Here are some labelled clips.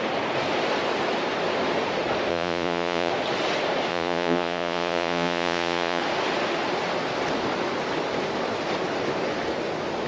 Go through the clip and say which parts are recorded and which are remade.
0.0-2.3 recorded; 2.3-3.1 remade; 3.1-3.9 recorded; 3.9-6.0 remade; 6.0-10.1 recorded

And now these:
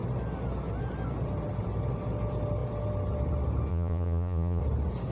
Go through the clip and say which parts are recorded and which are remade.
0.0-3.7 recorded; 3.7-4.6 remade; 4.6-5.1 recorded

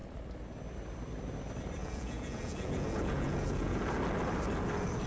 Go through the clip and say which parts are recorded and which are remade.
0.0-1.8 recorded; 1.8-3.8 remade; 3.8-5.1 recorded

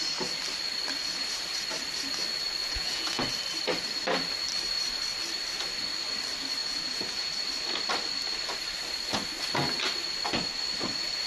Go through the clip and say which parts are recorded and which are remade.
0.0-2.6 recorded; 2.6-3.2 remade; 3.2-6.6 recorded; 6.6-7.3 remade; 7.3-11.3 recorded

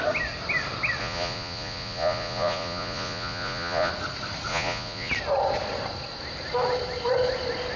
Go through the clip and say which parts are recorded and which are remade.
0.0-1.0 recorded; 1.0-3.9 remade; 3.9-4.5 recorded; 4.5-5.1 remade; 5.1-7.8 recorded

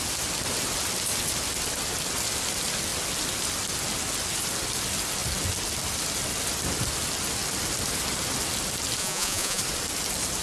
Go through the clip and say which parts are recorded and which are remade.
0.0-9.0 recorded; 9.0-9.6 remade; 9.6-10.4 recorded